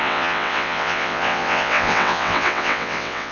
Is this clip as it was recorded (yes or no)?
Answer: no